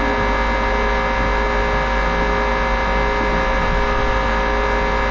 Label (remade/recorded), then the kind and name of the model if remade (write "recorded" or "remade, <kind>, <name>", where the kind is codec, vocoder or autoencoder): recorded